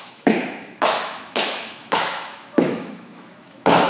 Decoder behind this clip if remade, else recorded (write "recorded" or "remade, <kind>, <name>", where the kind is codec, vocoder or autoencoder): remade, autoencoder, DAC-VAE